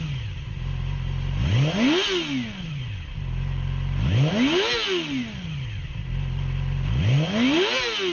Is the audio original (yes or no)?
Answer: yes